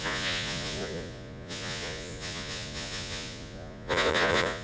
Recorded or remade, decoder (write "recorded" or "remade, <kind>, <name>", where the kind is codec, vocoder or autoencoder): remade, vocoder, Vocos